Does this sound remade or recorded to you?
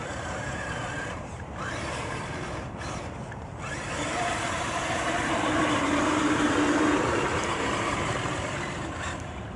remade